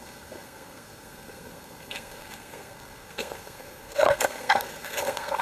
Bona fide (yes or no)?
no